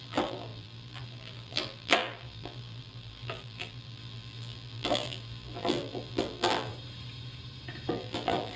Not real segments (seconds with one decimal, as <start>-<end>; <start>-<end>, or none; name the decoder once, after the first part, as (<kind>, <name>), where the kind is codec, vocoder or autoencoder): 0.0-6.7 (vocoder, BigVGAN v2); 7.9-8.6